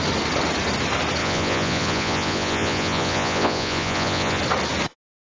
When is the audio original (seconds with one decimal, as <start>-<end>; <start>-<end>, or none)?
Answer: 0.0-1.2; 4.4-5.3